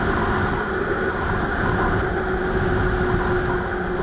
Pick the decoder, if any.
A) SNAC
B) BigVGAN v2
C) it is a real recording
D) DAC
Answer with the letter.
C